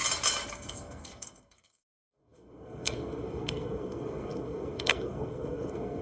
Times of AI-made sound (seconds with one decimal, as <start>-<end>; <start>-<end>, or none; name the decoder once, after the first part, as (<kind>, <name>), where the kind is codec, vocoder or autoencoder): 0.5-6.0 (codec, SNAC)